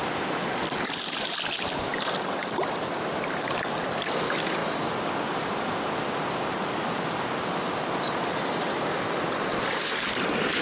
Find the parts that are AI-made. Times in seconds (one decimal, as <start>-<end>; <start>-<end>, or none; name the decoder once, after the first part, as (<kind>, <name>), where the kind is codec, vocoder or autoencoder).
none